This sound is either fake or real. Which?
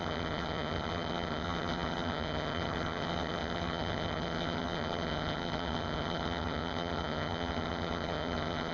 fake